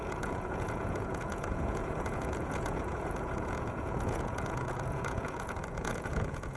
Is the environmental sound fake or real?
fake